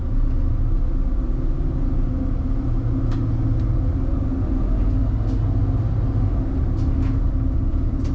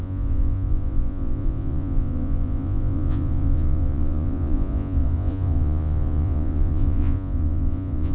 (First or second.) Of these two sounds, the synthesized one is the second